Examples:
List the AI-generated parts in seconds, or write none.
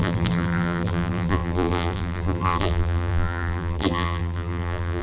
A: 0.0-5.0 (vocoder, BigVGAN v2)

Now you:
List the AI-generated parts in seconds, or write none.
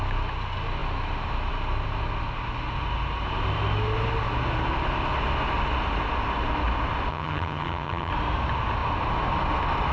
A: 7.1-8.1 (vocoder, HiFi-GAN)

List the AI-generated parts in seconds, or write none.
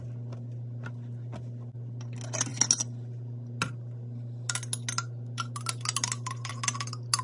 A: none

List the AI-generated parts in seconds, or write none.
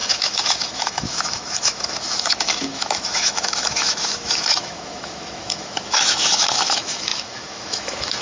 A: 0.0-8.2 (autoencoder, DAC-VAE)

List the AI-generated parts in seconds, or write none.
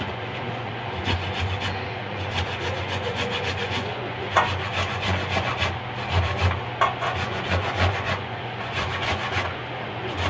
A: 0.0-5.5 (vocoder, Vocos); 7.0-10.3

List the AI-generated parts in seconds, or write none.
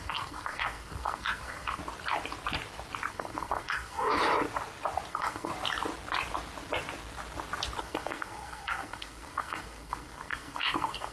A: 0.0-1.8 (codec, SNAC); 3.1-4.2; 5.1-5.5; 7.8-11.1